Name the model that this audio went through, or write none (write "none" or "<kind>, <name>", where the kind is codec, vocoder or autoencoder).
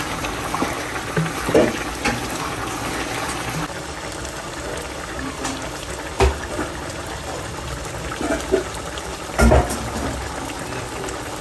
none